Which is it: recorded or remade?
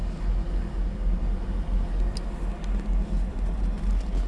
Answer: recorded